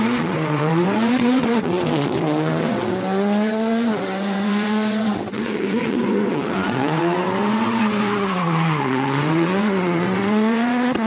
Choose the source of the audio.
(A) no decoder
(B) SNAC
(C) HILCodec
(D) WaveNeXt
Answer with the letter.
D